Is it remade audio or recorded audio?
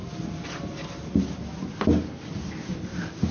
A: recorded